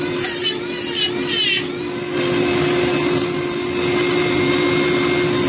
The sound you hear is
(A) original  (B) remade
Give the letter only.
A